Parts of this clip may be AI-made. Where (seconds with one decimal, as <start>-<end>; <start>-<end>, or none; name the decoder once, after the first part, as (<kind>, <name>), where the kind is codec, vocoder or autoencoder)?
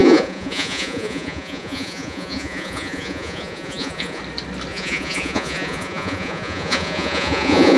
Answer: 0.0-4.2 (vocoder, Vocos); 4.7-7.8